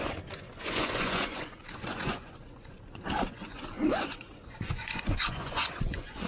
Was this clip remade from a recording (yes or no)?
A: yes